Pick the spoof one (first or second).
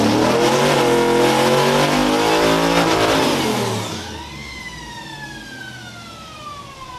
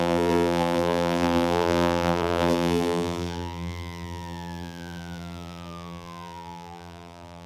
second